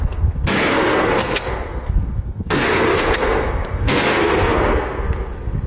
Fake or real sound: fake